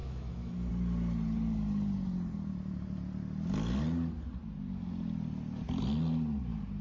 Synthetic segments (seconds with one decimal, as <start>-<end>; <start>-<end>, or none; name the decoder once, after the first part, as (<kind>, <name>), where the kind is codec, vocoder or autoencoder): 0.0-0.7 (autoencoder, DAC-VAE)